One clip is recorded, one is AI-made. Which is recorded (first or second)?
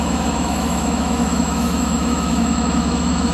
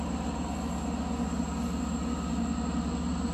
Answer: second